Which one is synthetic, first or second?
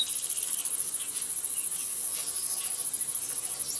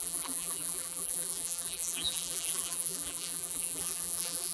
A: second